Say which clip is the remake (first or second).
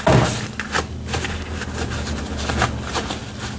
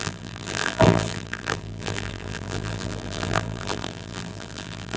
second